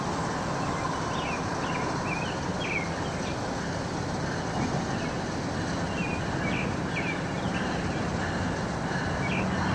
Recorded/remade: recorded